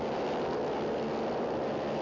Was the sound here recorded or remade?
recorded